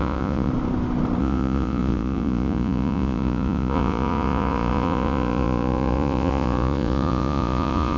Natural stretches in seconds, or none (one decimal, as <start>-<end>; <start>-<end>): 0.5-1.2